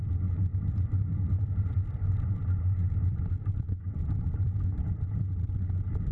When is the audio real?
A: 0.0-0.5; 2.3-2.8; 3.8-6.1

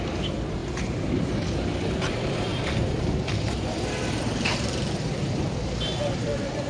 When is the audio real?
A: none

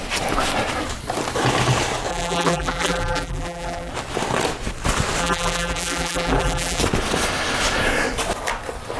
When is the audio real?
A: 0.0-2.1; 3.9-5.2; 6.8-9.0

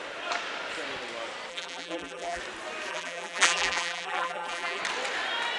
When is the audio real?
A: 0.0-1.5; 2.4-2.9; 4.8-5.6

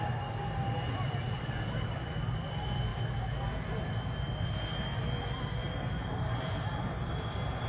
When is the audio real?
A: 2.9-6.8